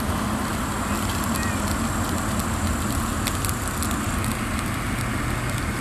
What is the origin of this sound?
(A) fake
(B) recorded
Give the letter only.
B